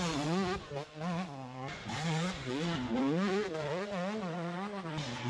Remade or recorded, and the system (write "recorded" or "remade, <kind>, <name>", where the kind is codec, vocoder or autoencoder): remade, vocoder, Vocos